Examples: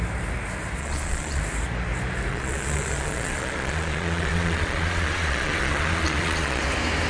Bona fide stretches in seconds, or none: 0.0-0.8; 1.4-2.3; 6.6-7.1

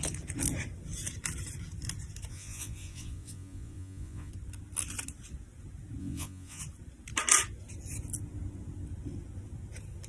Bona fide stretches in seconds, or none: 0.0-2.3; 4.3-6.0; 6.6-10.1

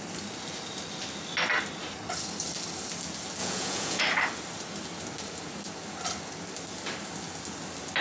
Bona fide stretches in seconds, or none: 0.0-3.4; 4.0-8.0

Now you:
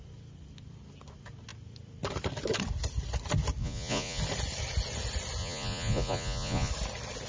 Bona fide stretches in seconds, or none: 0.0-3.6; 4.2-5.4; 6.7-7.3

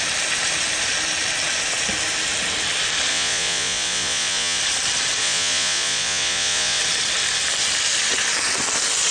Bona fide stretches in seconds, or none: 0.0-3.1; 4.6-5.2; 6.8-9.1

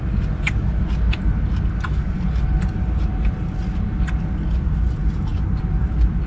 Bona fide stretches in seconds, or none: 0.0-6.3